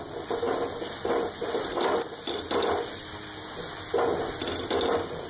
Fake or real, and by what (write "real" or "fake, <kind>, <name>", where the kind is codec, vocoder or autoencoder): real